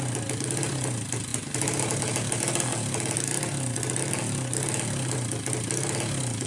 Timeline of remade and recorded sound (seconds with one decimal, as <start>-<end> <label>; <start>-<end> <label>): 0.0-6.5 recorded